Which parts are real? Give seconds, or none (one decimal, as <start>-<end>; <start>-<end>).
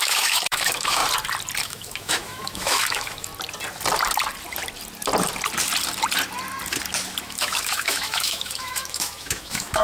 1.0-1.6; 3.3-7.2